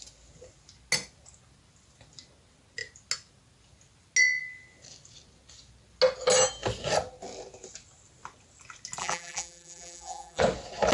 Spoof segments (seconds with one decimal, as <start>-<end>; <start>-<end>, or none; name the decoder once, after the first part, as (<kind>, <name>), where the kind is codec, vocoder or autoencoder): 9.0-10.4 (vocoder, BigVGAN v2)